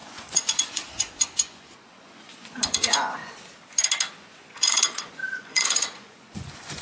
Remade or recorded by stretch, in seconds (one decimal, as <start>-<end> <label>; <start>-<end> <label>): 0.0-3.2 remade; 3.2-4.1 recorded; 4.1-6.8 remade